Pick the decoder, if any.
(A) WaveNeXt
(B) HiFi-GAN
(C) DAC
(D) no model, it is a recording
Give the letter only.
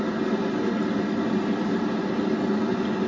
D